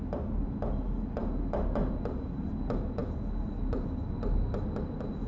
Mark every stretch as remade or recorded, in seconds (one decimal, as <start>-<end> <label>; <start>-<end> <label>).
0.0-5.3 recorded